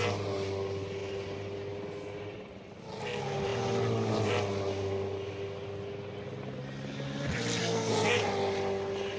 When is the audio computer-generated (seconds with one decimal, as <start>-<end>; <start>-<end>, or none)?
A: 7.6-8.2

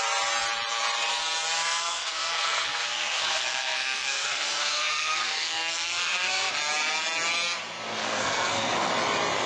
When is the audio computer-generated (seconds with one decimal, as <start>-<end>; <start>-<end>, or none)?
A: 1.6-6.5; 8.0-8.9

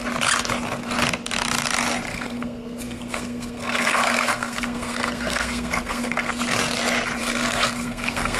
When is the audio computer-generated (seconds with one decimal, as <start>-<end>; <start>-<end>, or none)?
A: 2.1-6.3; 7.2-8.4

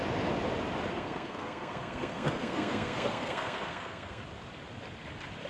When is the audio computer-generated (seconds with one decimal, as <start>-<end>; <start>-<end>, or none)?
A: 0.9-4.2

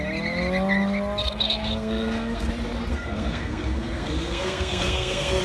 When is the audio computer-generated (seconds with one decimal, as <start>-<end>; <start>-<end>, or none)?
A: 1.2-2.5; 2.9-5.4